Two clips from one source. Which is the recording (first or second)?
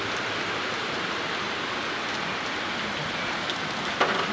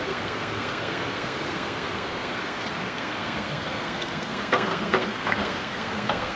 first